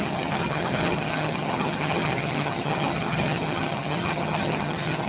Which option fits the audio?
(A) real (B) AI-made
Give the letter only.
B